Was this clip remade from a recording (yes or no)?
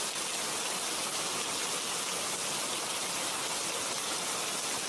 no